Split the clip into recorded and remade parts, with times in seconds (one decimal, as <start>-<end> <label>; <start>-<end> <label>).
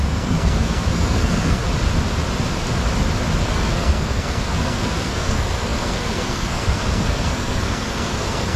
0.0-1.6 remade; 1.6-3.4 recorded; 3.4-8.6 remade